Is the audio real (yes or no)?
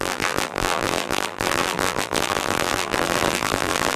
no